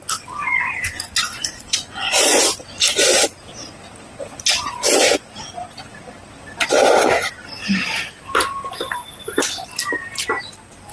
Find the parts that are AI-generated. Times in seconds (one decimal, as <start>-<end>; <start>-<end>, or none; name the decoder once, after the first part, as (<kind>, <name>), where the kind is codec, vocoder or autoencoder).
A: 0.4-2.4 (vocoder, Vocos)